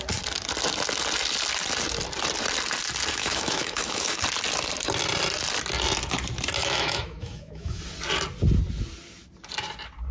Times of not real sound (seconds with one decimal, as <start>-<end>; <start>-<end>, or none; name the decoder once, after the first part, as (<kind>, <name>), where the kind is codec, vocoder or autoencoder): 3.1-4.2 (autoencoder, DAC-VAE); 6.6-7.8